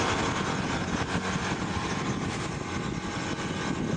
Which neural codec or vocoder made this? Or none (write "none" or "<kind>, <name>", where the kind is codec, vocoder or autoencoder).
none